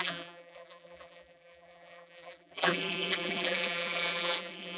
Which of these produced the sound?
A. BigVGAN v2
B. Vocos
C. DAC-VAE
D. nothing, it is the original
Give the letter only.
A